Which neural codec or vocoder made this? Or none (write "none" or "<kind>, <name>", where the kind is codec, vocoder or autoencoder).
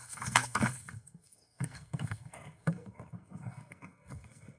codec, SNAC